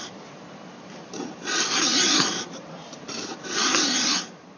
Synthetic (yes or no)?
yes